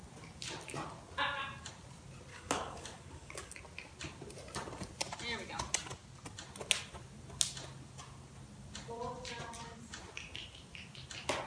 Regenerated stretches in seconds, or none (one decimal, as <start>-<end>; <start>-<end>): 2.3-3.6